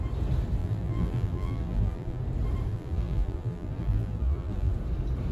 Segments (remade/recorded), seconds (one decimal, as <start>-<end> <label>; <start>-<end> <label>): 0.0-0.6 recorded; 0.6-2.2 remade; 2.2-2.7 recorded; 2.7-4.7 remade; 4.7-5.3 recorded